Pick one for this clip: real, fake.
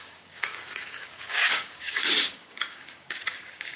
fake